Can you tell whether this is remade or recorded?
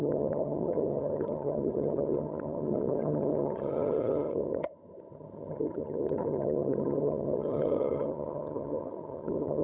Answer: remade